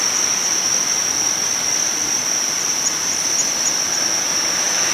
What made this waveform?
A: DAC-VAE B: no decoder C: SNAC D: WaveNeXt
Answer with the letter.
B